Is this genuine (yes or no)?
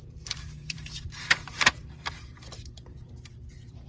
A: no